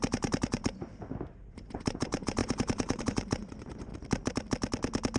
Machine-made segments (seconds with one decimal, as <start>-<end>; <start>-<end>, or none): 0.0-0.9; 1.5-3.9